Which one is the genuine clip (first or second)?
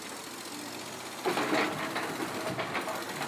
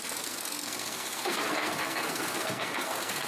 first